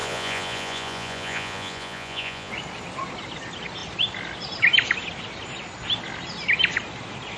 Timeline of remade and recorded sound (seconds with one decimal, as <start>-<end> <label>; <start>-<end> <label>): 0.0-2.5 remade; 2.5-7.4 recorded